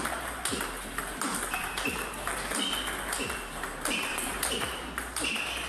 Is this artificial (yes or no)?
no